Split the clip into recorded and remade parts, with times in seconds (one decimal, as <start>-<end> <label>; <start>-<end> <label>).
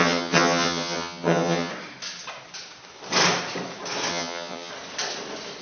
0.0-1.7 remade; 1.7-4.1 recorded; 4.1-4.7 remade; 4.7-5.6 recorded